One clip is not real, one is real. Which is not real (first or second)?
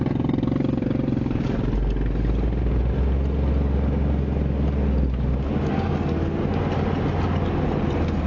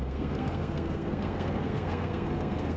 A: second